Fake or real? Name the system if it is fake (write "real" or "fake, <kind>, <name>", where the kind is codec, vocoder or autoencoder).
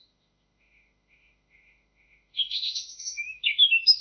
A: fake, autoencoder, DAC-VAE